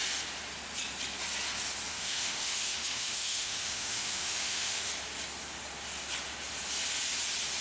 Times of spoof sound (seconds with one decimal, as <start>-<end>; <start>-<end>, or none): 1.9-4.9